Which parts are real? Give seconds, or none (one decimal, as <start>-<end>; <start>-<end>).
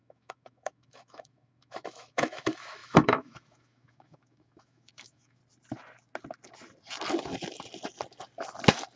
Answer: 5.4-9.0